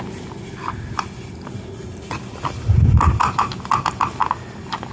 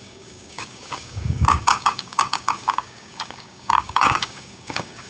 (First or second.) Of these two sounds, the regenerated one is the second